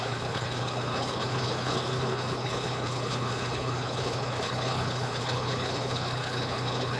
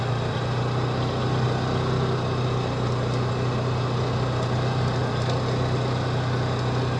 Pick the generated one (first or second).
first